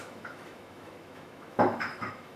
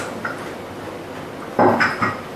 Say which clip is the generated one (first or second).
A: first